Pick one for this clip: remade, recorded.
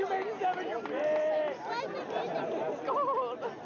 recorded